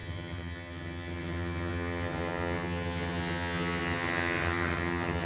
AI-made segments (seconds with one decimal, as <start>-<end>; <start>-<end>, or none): 0.0-5.3